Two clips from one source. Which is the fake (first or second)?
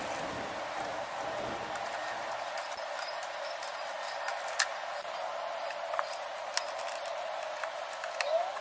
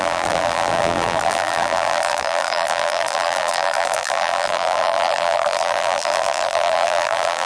second